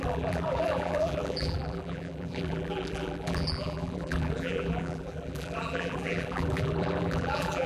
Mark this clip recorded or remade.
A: remade